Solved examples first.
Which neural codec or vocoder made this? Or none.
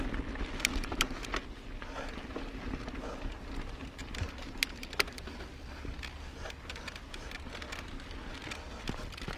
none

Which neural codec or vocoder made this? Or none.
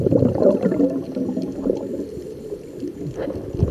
none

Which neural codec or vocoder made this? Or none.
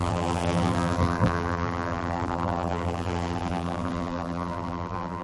vocoder, BigVGAN v2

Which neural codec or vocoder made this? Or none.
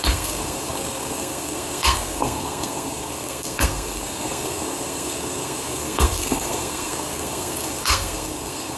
codec, SNAC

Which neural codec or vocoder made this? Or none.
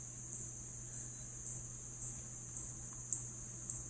none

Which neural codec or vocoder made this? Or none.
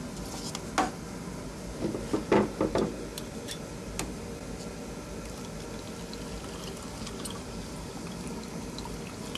none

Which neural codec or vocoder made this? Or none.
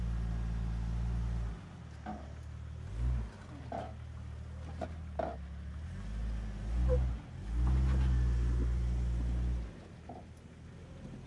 none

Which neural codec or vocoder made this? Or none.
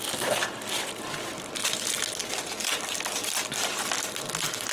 vocoder, BigVGAN v2